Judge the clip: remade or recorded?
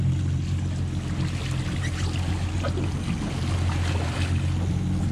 recorded